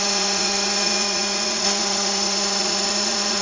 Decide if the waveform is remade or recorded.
remade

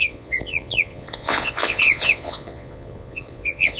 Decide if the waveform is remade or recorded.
remade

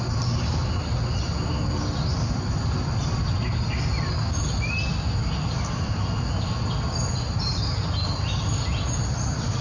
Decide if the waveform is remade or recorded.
recorded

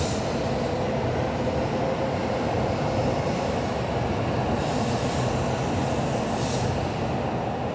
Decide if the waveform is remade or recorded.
recorded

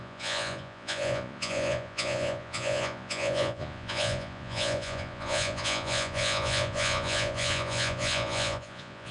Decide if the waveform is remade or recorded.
remade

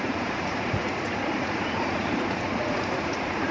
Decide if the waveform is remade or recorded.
remade